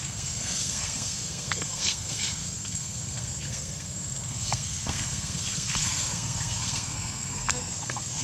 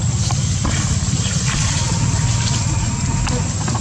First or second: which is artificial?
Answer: first